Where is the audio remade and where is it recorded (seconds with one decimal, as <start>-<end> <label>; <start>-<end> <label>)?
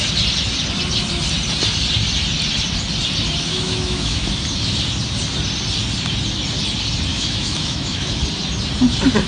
0.0-3.5 recorded; 3.5-4.3 remade; 4.3-7.1 recorded; 7.1-8.2 remade; 8.2-9.3 recorded